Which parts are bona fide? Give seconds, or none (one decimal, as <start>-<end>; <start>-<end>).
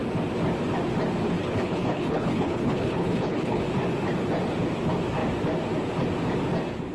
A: 0.0-1.4; 3.6-6.9